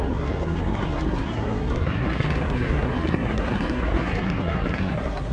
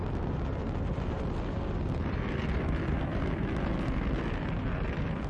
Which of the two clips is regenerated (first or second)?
first